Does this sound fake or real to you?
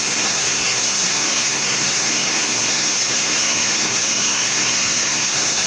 fake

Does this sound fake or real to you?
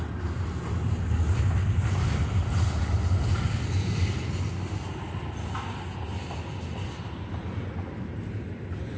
real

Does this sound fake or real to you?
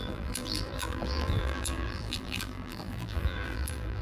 fake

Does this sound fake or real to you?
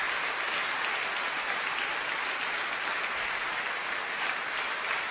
real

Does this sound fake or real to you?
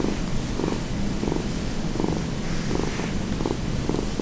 real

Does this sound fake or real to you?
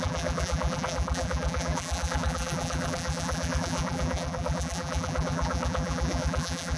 fake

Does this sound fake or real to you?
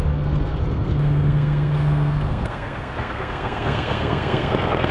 fake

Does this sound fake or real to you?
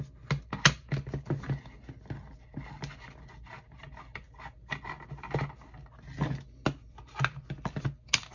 real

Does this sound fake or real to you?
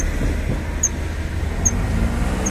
real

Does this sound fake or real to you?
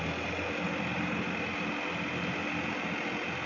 real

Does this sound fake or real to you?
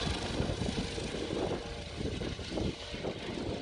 real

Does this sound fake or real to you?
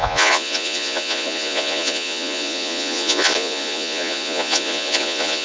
fake